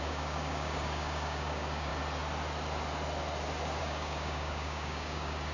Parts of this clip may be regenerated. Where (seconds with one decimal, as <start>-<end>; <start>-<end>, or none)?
0.0-1.9; 3.8-5.5